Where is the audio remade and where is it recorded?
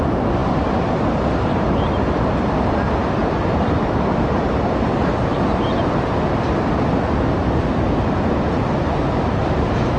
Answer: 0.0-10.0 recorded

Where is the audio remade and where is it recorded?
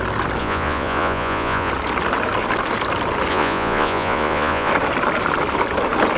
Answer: 0.0-0.4 recorded; 0.4-1.7 remade; 1.7-3.3 recorded; 3.3-4.7 remade; 4.7-6.2 recorded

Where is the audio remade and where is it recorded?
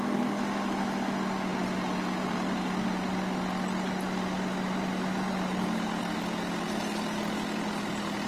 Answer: 0.0-8.3 recorded